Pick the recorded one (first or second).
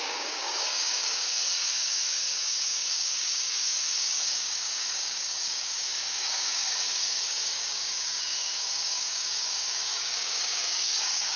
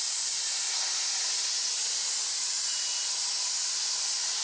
second